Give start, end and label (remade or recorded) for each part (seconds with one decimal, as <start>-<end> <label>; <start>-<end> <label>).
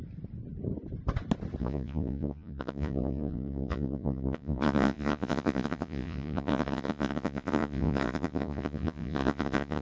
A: 0.0-1.6 recorded; 1.6-9.8 remade